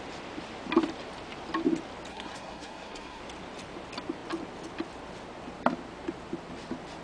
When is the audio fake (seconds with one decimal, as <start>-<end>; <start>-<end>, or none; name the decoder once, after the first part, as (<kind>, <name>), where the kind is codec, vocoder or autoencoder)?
2.1-3.2 (codec, SNAC)